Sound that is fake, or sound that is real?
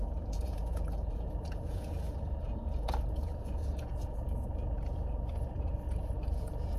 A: fake